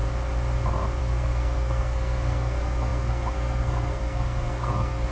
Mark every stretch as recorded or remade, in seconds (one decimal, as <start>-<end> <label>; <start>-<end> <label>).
0.0-1.0 recorded; 1.0-5.1 remade